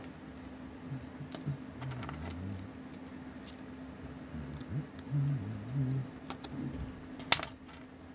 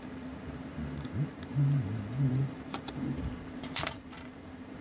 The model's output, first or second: second